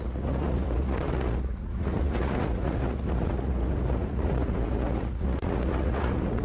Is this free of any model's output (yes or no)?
no